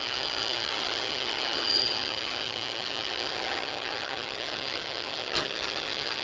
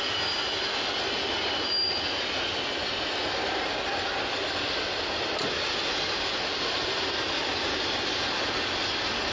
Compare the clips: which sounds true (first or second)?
second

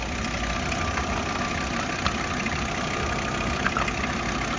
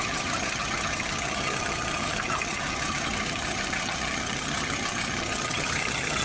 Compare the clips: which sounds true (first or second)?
first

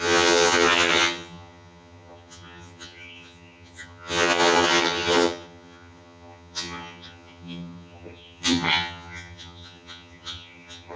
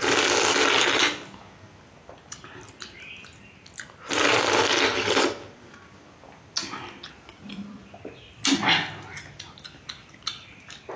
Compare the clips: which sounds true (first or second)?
second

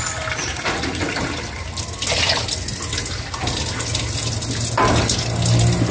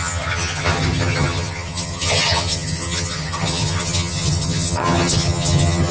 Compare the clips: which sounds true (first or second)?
first